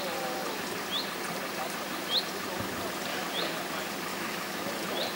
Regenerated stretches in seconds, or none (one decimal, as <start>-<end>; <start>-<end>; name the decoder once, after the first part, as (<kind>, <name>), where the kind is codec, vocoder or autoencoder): 4.1-4.7 (autoencoder, DAC-VAE)